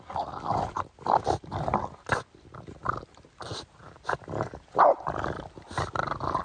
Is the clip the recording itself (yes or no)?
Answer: yes